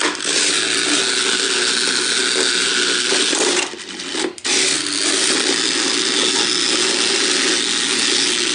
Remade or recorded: recorded